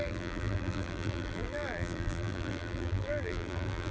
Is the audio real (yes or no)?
no